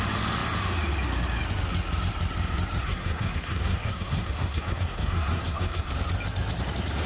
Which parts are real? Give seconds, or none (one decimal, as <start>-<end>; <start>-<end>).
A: 0.0-2.8; 5.9-7.1